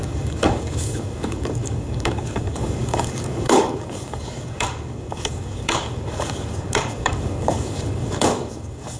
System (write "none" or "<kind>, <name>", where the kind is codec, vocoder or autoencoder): codec, DAC